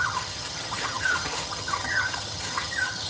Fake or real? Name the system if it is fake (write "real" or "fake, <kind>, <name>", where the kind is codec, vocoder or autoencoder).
fake, vocoder, HiFi-GAN